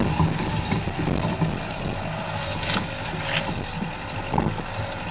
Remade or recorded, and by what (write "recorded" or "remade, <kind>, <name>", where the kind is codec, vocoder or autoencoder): recorded